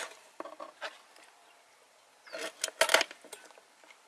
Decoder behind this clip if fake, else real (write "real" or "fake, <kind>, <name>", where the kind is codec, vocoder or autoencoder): real